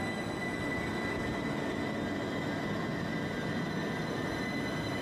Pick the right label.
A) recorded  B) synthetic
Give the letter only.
A